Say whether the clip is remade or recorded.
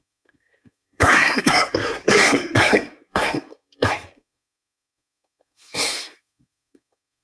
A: remade